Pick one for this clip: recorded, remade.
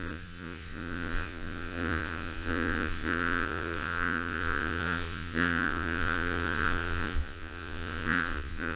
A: remade